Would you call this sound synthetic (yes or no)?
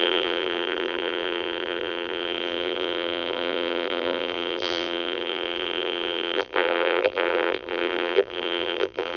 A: yes